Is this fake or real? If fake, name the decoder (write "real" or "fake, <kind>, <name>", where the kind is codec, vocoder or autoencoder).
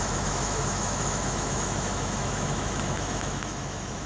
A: fake, autoencoder, DAC-VAE